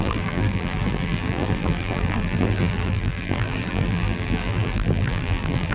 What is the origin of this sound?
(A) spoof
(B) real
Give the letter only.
A